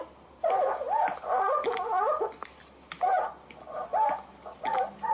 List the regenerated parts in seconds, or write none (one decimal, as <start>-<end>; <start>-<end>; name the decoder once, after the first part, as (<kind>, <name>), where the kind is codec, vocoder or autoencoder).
none